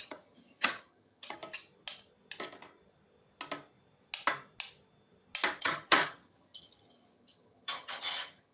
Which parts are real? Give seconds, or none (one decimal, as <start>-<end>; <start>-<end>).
1.4-5.6